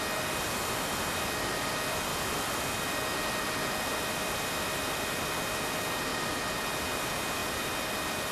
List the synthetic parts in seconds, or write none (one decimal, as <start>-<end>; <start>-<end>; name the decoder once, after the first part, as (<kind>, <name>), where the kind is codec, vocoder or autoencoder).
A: 7.4-8.3 (vocoder, BigVGAN v2)